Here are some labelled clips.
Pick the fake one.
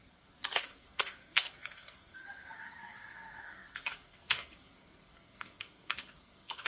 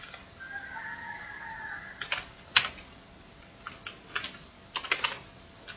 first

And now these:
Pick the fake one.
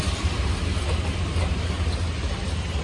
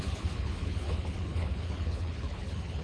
second